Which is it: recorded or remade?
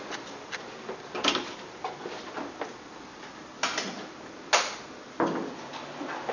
recorded